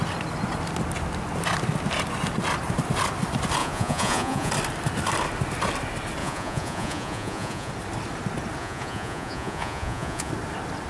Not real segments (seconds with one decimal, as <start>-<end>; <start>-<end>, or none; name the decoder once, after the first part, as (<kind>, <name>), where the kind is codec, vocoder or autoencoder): 3.6-4.5 (vocoder, Vocos); 6.2-7.7; 8.6-10.3